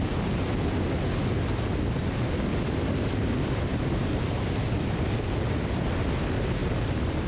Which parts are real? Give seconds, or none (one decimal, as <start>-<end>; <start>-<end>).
0.0-2.5; 3.3-3.7; 6.1-6.6